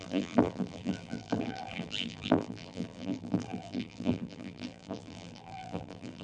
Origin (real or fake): fake